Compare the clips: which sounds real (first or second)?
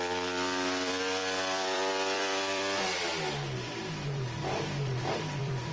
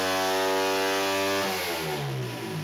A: second